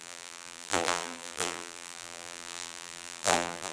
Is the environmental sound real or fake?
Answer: fake